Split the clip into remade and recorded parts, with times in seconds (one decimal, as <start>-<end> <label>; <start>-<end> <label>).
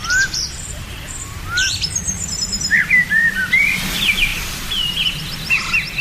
0.0-6.0 remade